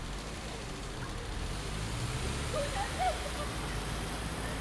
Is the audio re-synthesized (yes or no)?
no